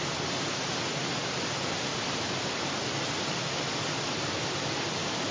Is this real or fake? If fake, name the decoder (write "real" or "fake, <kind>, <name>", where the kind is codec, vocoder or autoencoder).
real